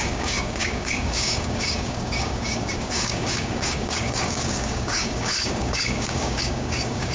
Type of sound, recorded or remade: remade